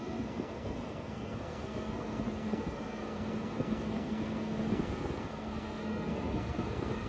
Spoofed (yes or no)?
yes